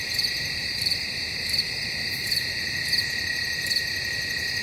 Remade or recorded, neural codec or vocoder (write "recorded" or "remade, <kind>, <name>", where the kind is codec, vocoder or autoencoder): remade, vocoder, BigVGAN v2